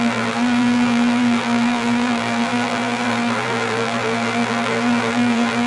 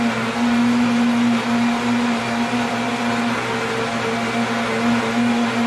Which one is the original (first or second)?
second